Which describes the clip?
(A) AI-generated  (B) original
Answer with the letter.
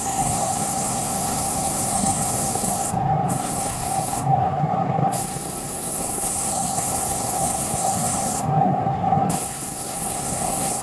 A